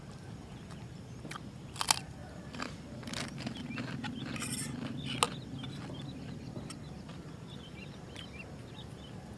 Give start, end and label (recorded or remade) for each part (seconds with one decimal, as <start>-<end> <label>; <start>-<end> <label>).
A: 0.0-2.2 recorded; 2.2-3.4 remade; 3.4-9.4 recorded